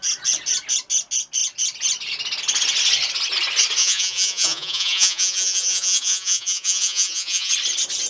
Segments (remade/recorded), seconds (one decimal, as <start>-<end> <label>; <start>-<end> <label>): 0.0-3.8 recorded; 3.8-7.5 remade; 7.5-8.1 recorded